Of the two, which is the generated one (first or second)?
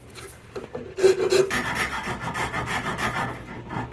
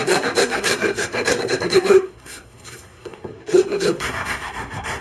second